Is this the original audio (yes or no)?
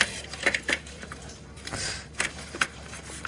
no